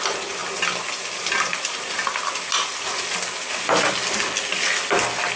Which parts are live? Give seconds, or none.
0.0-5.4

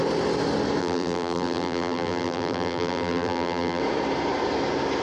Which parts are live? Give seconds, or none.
0.0-0.8; 3.8-5.0

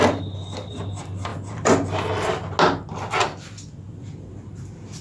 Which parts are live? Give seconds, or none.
0.0-5.0

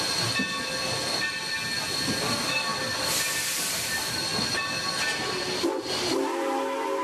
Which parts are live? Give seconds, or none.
0.0-7.0

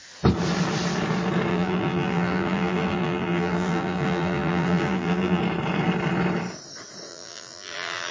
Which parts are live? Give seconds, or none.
0.0-1.5; 5.4-7.1

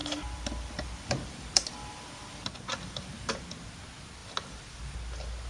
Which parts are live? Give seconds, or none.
3.3-4.2; 4.8-5.5

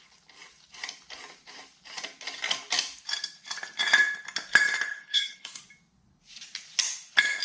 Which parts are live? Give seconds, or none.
0.0-4.9; 5.6-7.4

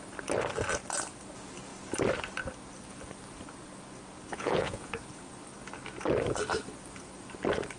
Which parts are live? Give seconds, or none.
0.0-4.3; 4.9-7.8